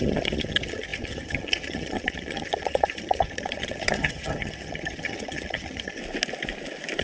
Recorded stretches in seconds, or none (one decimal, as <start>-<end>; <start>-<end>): 6.0-7.0